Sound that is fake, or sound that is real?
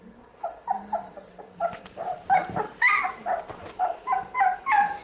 fake